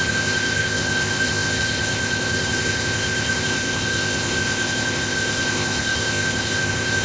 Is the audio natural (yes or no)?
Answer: no